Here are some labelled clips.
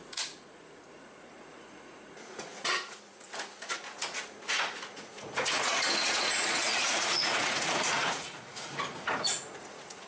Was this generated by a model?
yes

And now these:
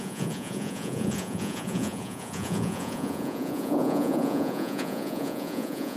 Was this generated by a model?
yes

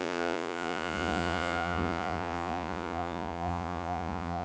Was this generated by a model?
yes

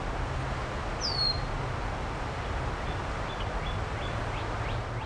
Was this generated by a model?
no